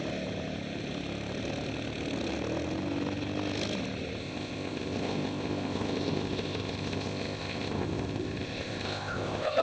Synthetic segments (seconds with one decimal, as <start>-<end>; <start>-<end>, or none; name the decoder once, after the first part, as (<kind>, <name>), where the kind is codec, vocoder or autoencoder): 4.2-9.6 (codec, ZipCodec)